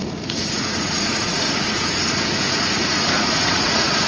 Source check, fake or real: fake